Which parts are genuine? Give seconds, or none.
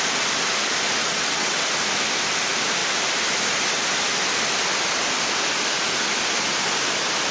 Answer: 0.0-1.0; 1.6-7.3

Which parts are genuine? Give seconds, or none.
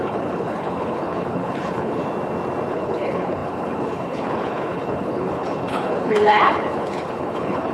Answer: 2.0-2.7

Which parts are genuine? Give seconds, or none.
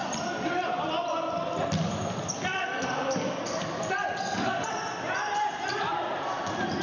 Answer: 0.0-2.5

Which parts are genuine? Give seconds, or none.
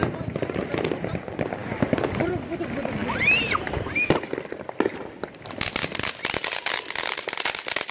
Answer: 0.0-7.9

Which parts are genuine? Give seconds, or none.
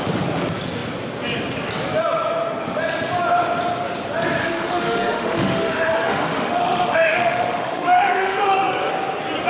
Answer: 0.0-4.4; 8.9-9.5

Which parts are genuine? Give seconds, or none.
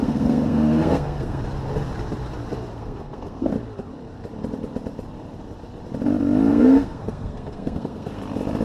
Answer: 1.4-2.7; 3.5-6.5; 8.2-8.6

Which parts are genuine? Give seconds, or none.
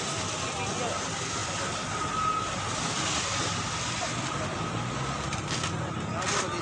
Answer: 0.0-6.6